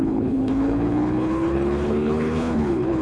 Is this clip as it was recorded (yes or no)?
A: no